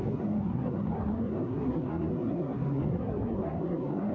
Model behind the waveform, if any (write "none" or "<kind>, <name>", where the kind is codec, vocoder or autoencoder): codec, SNAC